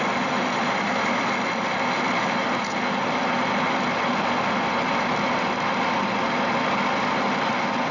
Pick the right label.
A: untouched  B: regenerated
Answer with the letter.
A